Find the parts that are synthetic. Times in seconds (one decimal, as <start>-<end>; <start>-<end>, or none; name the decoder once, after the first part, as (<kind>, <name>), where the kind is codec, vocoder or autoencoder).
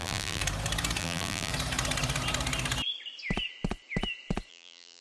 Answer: 0.0-0.4 (vocoder, BigVGAN v2); 1.0-1.5; 4.5-5.0